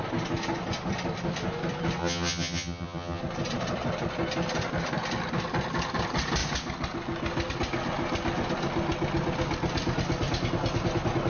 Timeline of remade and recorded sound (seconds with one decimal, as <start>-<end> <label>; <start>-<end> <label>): 0.0-2.0 recorded; 2.0-3.2 remade; 3.2-11.3 recorded